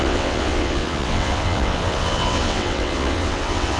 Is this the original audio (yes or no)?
no